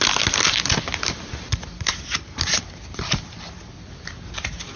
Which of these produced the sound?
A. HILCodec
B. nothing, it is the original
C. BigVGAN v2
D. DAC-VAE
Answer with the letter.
B